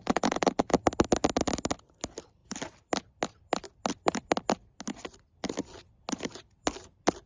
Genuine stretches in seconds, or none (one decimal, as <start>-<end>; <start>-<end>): 0.0-7.3